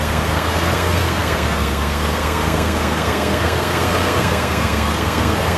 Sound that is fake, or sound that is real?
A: fake